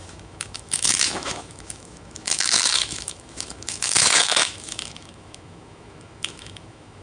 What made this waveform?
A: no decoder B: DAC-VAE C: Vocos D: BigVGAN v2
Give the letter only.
B